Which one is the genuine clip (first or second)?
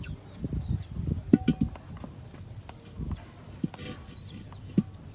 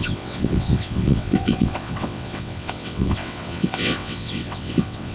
first